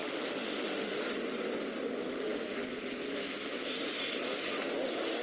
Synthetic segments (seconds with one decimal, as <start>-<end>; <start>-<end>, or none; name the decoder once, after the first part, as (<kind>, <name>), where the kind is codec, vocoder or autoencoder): 0.0-1.0 (autoencoder, DAC-VAE)